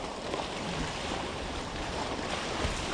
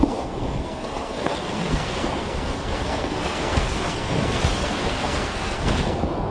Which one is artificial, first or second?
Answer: second